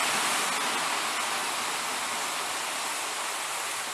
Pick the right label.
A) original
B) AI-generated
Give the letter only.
A